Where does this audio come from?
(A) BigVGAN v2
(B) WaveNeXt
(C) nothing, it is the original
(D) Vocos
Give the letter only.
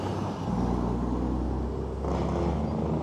C